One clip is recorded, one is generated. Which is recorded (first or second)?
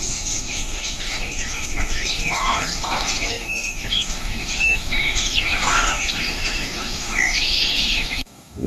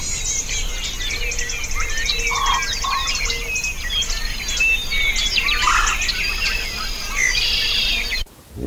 second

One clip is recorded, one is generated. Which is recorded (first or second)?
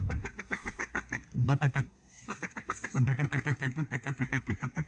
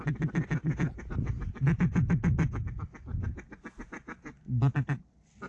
second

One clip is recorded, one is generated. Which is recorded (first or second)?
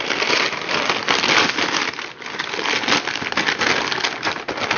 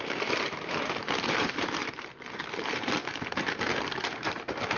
first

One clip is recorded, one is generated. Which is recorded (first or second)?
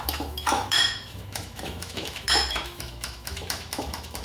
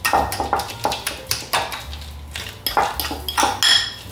second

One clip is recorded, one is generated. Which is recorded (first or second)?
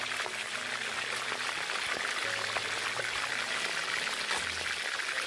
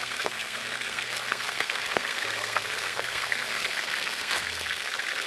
first